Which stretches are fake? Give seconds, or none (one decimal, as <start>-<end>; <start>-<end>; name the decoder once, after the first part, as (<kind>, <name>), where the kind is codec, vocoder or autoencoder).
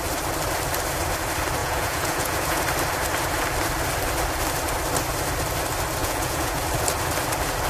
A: 1.6-2.6 (vocoder, Vocos); 6.0-6.6